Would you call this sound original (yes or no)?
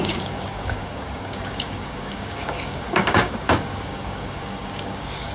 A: no